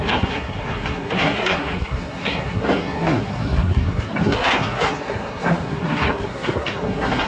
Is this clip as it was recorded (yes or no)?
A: no